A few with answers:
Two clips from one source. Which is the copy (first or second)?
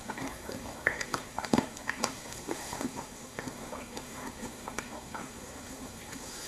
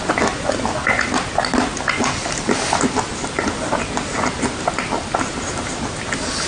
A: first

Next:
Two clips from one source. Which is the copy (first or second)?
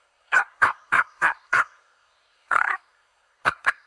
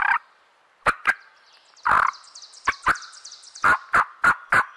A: first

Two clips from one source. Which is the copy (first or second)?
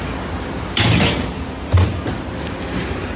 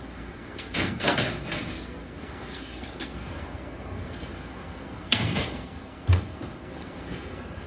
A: second